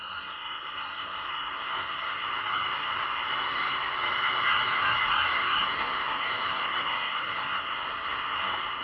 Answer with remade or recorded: remade